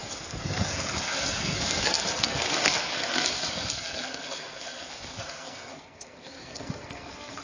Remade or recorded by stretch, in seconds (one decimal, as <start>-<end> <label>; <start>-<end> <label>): 0.0-7.4 remade